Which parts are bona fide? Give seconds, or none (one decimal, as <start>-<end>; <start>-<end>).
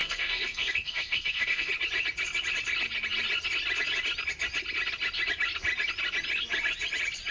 1.7-7.3